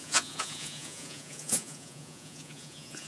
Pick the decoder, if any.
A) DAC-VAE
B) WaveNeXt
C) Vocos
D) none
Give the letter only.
C